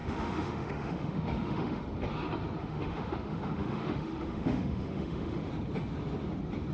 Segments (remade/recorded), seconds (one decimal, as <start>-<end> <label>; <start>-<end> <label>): 0.0-1.8 remade; 1.8-2.6 recorded; 2.6-5.5 remade; 5.5-6.7 recorded